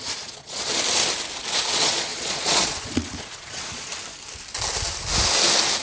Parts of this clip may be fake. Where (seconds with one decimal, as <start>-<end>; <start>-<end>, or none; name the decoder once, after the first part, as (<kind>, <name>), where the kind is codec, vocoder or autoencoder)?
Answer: 0.0-0.7 (vocoder, Vocos); 1.7-3.9